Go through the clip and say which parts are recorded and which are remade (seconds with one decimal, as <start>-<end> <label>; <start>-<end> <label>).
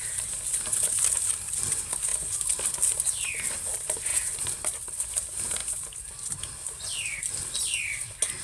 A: 0.0-2.1 remade; 2.1-2.7 recorded; 2.7-8.4 remade